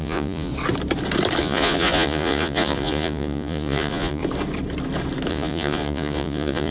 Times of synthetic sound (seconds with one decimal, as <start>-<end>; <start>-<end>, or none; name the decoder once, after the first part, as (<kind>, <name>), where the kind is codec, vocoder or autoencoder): 0.0-0.5 (vocoder, Vocos); 1.4-4.2; 5.3-6.7